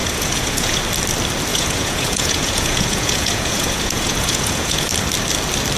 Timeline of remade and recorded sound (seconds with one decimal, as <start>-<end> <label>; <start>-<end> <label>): 0.0-0.8 remade; 0.8-1.5 recorded; 1.5-4.9 remade; 4.9-5.8 recorded